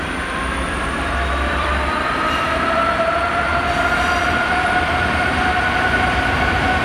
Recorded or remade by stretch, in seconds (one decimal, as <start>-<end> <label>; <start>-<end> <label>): 0.0-3.5 remade; 3.5-4.4 recorded; 4.4-6.8 remade